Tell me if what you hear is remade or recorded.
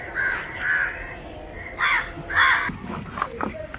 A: recorded